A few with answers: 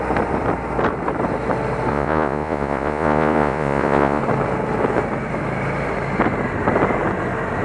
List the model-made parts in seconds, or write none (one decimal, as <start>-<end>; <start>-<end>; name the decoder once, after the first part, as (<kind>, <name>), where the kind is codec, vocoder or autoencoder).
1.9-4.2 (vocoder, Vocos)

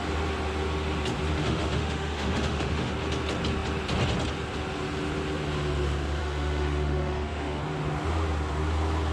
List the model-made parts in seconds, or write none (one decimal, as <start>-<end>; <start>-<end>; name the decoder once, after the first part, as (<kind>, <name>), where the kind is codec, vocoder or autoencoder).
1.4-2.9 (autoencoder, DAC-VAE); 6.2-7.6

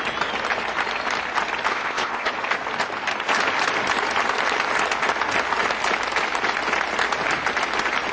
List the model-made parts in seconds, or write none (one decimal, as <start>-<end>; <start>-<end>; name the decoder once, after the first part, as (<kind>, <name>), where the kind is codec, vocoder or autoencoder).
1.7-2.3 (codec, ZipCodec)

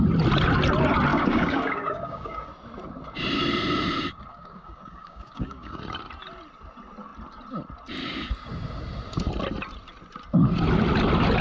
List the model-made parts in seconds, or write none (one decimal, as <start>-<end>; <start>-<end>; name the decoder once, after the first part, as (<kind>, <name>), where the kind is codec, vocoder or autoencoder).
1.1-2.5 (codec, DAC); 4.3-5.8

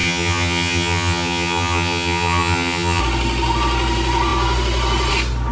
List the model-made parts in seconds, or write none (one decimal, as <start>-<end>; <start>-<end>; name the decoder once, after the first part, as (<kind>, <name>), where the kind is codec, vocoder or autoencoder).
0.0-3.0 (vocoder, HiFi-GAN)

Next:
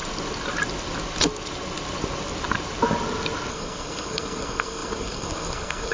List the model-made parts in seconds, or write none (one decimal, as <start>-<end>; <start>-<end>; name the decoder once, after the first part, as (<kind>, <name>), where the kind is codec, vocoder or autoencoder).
3.5-5.9 (codec, SNAC)

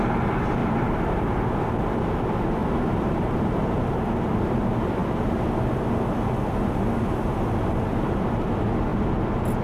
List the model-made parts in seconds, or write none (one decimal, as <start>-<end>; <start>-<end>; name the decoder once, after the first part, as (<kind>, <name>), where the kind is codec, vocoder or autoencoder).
0.6-1.5 (vocoder, BigVGAN v2); 2.6-4.6

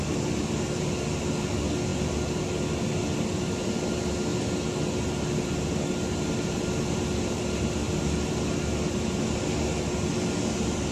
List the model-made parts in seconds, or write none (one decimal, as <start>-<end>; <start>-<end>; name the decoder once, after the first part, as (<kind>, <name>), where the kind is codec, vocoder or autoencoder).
none